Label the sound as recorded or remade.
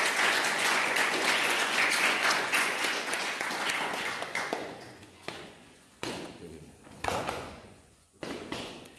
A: remade